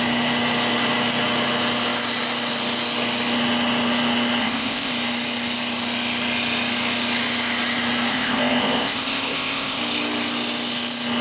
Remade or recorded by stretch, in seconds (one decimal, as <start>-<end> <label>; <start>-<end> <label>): 0.0-4.4 recorded; 4.4-4.9 remade; 4.9-8.1 recorded; 8.1-9.8 remade; 9.8-11.2 recorded